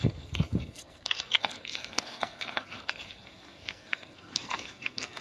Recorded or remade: remade